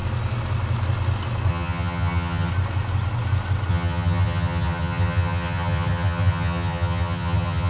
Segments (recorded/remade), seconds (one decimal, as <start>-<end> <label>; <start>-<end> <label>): 0.0-1.5 recorded; 1.5-2.5 remade; 2.5-3.7 recorded; 3.7-7.7 remade

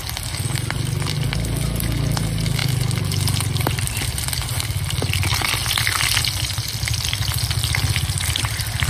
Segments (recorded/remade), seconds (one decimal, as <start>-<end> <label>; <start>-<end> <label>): 0.0-8.9 recorded

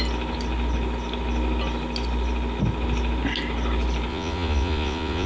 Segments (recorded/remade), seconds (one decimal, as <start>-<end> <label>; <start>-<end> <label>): 0.0-4.1 recorded; 4.1-5.3 remade

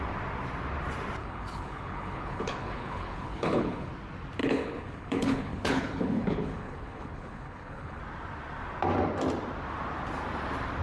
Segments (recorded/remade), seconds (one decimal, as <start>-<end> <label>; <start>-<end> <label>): 0.0-1.2 recorded; 1.2-3.9 remade; 3.9-4.4 recorded; 4.4-8.0 remade; 8.0-10.8 recorded

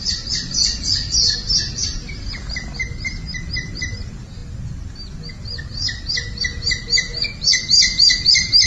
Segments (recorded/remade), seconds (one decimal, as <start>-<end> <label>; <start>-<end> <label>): 0.0-8.7 recorded

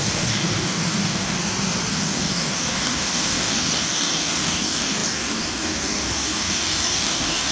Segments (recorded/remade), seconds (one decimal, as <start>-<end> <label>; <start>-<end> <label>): 0.0-1.4 remade; 1.4-1.9 recorded; 1.9-7.5 remade

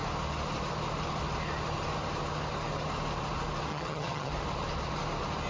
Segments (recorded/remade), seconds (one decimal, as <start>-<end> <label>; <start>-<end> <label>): 0.0-3.7 recorded; 3.7-4.3 remade; 4.3-5.5 recorded

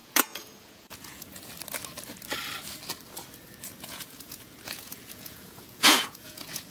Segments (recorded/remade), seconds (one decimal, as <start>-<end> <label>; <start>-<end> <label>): 0.0-1.3 remade; 1.3-3.7 recorded; 3.7-6.7 remade